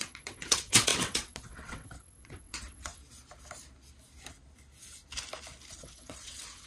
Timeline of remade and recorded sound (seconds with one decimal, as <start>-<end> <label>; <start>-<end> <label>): 0.0-3.0 remade; 3.0-5.8 recorded; 5.8-6.7 remade